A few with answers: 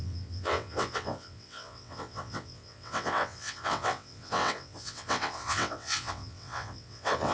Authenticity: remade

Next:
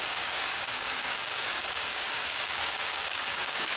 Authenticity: remade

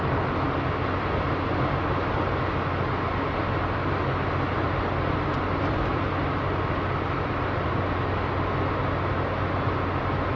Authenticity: recorded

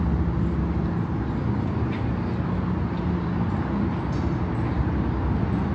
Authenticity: recorded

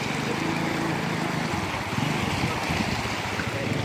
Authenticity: recorded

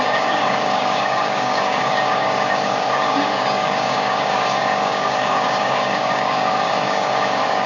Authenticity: remade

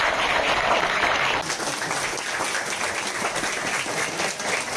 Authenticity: recorded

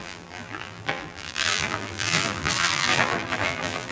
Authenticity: remade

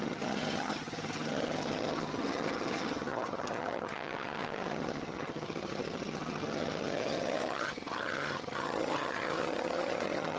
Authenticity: remade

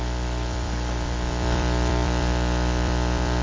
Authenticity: remade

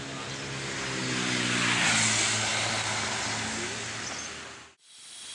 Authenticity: recorded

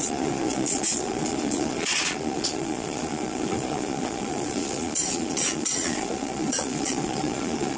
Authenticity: remade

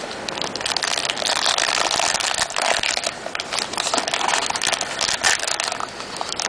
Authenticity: recorded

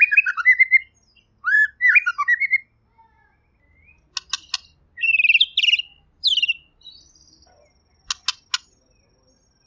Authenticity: recorded